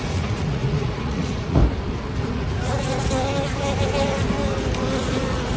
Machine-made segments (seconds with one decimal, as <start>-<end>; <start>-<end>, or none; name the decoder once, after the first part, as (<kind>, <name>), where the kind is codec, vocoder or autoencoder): 0.0-1.6 (vocoder, Vocos); 2.2-3.1; 5.0-5.6